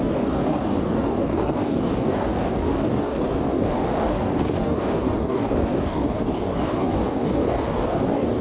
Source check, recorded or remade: remade